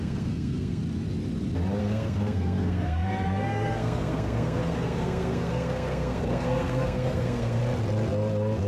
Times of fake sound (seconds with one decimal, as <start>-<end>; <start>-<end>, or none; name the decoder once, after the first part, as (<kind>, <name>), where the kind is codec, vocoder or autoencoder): 0.0-0.8 (codec, SNAC); 1.8-7.6